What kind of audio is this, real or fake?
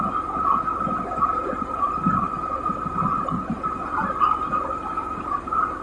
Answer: real